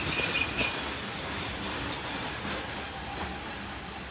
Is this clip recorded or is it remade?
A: recorded